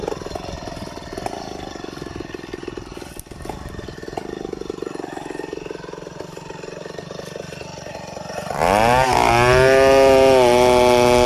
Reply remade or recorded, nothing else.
recorded